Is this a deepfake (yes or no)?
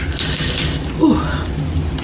no